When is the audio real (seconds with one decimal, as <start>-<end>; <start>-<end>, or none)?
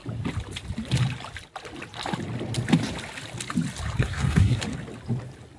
0.0-4.0; 4.6-5.6